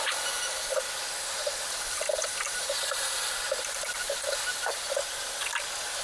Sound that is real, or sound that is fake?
real